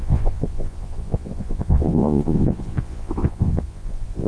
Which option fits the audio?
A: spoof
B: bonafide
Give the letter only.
A